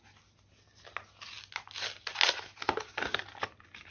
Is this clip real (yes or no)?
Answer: yes